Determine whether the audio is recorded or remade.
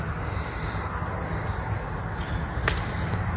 recorded